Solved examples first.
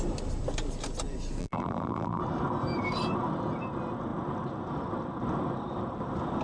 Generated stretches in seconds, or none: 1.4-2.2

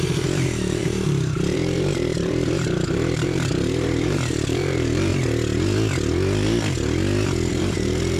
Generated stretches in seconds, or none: 0.0-5.1; 7.5-8.2

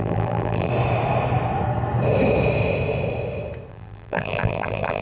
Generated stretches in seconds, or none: 0.0-0.7; 3.7-5.0

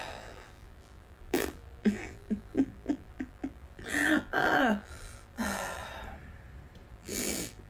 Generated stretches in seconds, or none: 0.0-5.8; 6.9-7.7

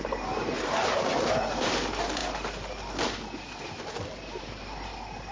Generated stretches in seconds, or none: 0.0-2.2; 4.4-5.3

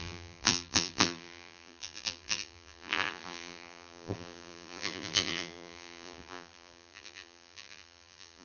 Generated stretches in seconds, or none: 0.0-8.4